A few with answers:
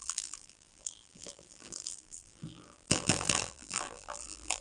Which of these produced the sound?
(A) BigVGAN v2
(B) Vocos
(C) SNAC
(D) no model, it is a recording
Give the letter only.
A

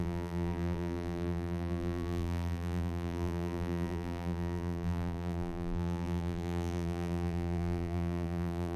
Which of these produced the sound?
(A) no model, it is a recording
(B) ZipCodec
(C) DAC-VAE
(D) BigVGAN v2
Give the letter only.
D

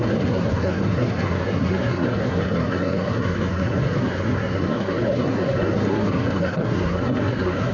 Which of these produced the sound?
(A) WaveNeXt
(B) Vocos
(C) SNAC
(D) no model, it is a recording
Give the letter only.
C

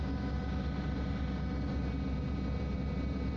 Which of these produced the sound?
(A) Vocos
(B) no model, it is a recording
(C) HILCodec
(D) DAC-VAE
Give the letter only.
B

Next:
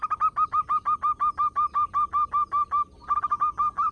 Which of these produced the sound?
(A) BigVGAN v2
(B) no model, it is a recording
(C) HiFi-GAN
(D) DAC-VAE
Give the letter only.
B